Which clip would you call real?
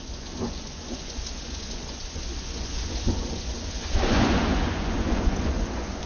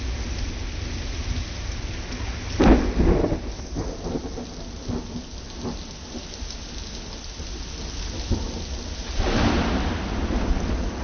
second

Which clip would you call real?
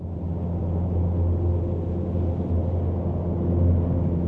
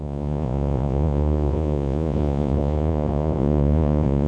first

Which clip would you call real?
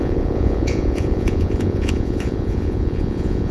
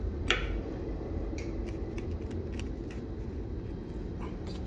second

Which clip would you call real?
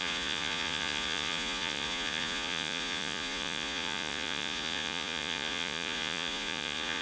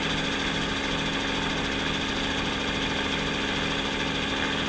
second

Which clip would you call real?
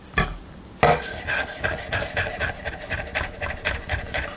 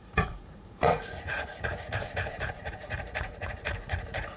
first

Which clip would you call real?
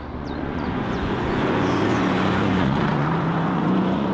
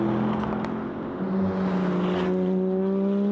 second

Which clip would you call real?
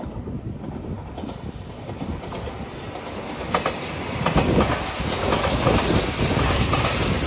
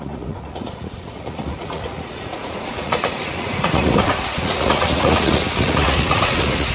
first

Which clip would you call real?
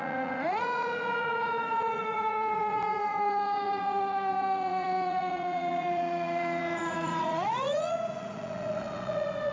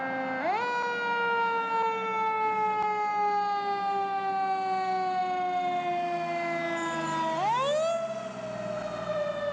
second